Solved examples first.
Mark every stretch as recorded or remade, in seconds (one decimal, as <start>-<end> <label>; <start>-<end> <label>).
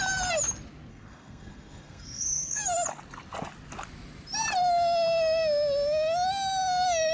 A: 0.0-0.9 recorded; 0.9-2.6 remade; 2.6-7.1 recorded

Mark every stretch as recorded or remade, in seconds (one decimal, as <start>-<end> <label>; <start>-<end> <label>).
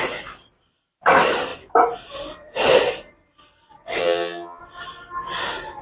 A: 0.0-4.0 recorded; 4.0-4.6 remade; 4.6-5.8 recorded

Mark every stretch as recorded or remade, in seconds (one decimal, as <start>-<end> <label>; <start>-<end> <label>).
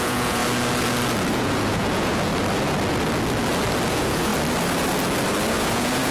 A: 0.0-0.4 remade; 0.4-1.3 recorded; 1.3-2.3 remade; 2.3-3.9 recorded; 3.9-4.3 remade; 4.3-5.5 recorded; 5.5-6.1 remade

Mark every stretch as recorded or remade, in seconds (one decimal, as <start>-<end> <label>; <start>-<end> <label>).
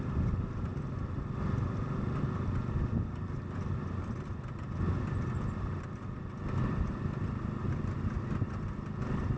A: 0.0-9.4 recorded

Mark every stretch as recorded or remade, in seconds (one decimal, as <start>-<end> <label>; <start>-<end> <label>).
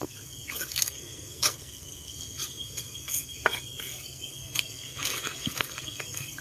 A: 0.0-6.4 remade